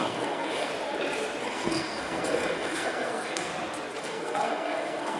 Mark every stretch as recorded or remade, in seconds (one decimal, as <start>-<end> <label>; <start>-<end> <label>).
0.0-0.7 remade; 0.7-1.4 recorded; 1.4-3.5 remade; 3.5-4.0 recorded; 4.0-5.2 remade